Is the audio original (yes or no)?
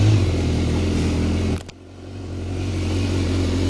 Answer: yes